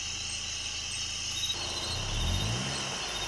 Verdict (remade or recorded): recorded